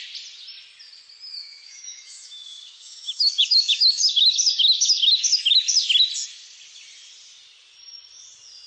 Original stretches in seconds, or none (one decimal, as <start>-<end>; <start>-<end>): 0.0-1.3; 5.7-8.7